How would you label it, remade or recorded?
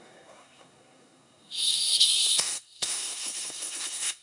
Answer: remade